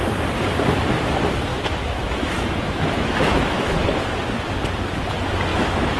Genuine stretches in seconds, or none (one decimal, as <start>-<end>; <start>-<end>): 0.0-1.5; 4.0-5.5